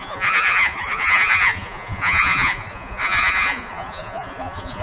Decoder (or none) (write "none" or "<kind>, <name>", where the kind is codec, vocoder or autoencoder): vocoder, Vocos